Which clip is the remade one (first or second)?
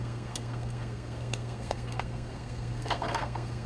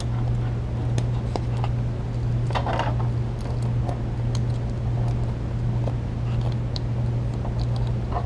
first